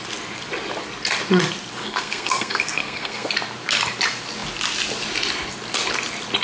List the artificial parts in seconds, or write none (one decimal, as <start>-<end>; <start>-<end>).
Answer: 1.8-3.3